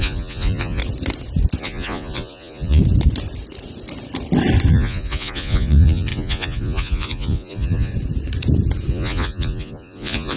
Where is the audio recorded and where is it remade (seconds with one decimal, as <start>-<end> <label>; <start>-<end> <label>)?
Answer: 0.0-0.8 remade; 0.8-1.6 recorded; 1.6-2.8 remade; 2.8-4.7 recorded; 4.7-7.9 remade; 7.9-8.9 recorded; 8.9-10.4 remade